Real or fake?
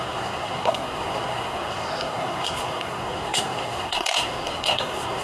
fake